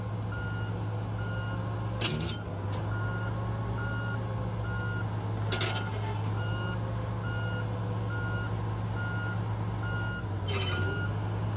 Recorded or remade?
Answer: recorded